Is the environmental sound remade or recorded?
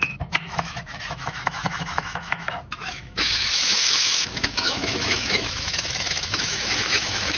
remade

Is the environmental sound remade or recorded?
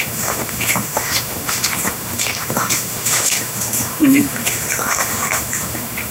remade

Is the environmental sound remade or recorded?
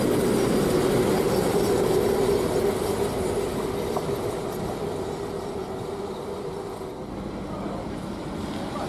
recorded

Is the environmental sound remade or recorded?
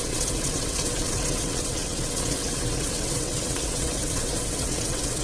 remade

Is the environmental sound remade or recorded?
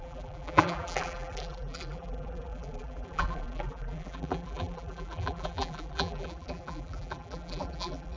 remade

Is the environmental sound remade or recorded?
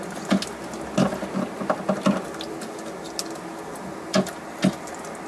recorded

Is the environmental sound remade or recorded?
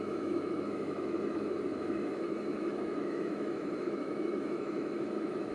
remade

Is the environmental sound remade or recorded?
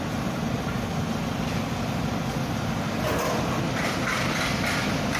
recorded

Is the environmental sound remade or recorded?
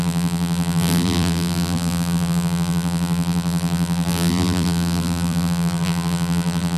remade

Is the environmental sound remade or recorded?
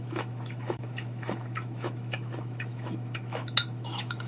remade